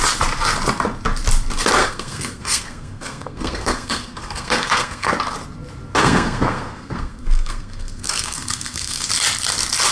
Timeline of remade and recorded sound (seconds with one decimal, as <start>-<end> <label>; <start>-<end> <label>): 0.0-1.8 recorded; 1.8-5.1 remade; 5.1-6.0 recorded; 6.0-9.1 remade; 9.1-9.9 recorded